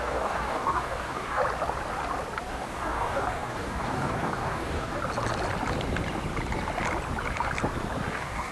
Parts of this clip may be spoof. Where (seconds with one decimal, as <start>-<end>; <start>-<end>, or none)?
0.0-1.4; 2.5-5.0; 8.1-8.5